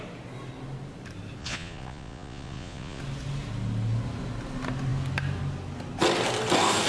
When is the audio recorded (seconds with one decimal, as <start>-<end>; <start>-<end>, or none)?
0.0-1.4; 3.0-6.9